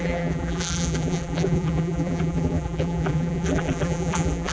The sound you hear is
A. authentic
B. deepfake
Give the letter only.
B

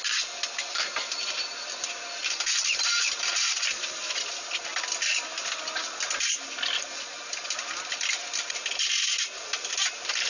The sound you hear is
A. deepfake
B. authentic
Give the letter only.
B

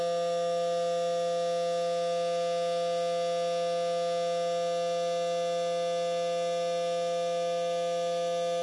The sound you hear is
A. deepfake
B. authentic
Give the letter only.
B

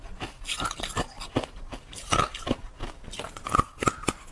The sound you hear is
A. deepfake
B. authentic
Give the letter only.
B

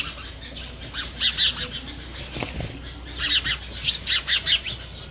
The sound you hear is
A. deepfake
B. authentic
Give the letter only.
B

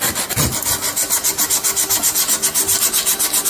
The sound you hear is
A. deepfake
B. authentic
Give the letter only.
B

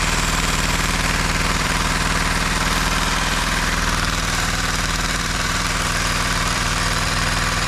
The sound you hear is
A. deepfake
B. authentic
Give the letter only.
A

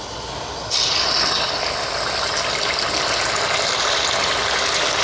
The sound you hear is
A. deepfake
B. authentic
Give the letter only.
B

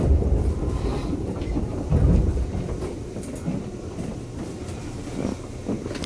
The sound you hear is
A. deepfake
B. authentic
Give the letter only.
A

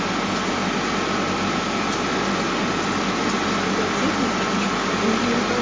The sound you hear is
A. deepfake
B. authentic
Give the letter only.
B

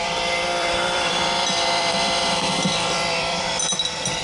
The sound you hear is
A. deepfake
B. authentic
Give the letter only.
A